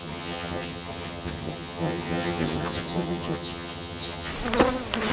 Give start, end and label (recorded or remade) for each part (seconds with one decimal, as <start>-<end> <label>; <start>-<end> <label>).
0.0-4.3 remade; 4.3-5.1 recorded